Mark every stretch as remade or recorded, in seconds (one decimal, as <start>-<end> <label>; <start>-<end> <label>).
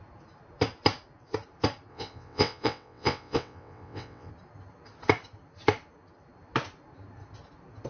0.0-1.9 recorded; 1.9-4.3 remade; 4.3-7.9 recorded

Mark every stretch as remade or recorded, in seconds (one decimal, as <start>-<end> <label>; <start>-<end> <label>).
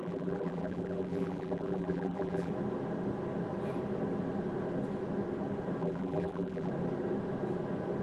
0.0-2.5 remade; 2.5-5.8 recorded; 5.8-6.7 remade; 6.7-8.0 recorded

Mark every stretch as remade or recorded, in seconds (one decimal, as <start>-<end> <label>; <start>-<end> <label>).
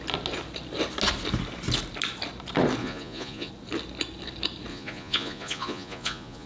0.0-2.8 recorded; 2.8-3.5 remade; 3.5-4.7 recorded; 4.7-6.5 remade